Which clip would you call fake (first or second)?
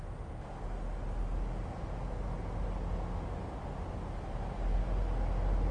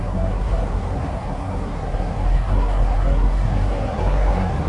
second